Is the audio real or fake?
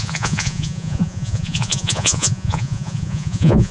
fake